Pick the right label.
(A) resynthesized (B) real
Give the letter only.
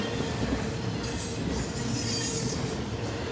B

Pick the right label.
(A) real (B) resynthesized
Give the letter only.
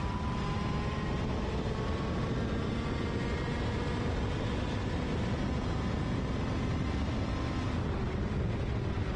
A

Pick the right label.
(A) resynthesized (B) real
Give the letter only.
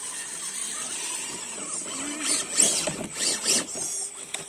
B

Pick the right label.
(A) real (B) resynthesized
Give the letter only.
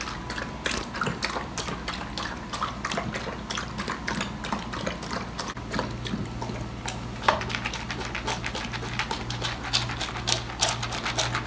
A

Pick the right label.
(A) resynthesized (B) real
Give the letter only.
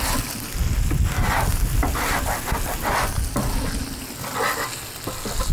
B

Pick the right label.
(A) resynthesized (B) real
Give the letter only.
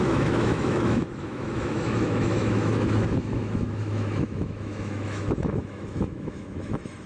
A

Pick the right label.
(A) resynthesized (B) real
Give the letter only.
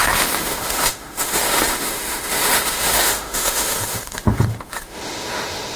A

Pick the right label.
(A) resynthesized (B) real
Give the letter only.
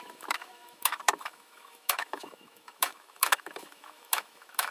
A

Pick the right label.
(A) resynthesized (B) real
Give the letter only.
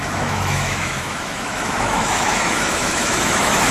A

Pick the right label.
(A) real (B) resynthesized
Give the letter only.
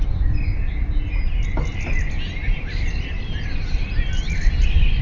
A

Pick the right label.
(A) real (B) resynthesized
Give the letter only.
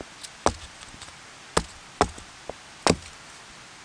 A